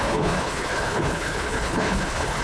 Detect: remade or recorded remade